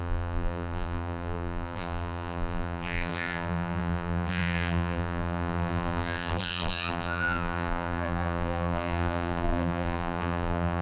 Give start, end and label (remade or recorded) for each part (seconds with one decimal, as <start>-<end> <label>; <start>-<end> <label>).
0.0-10.8 remade